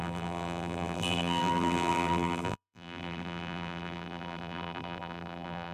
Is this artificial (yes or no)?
yes